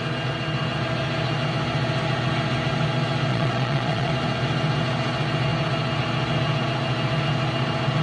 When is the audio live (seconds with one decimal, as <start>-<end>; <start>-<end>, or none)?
0.0-3.3; 4.1-8.0